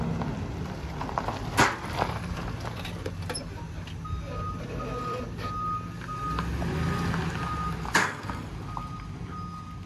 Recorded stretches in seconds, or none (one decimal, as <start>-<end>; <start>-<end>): 0.0-8.0; 8.5-9.9